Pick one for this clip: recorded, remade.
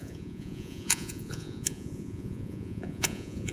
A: remade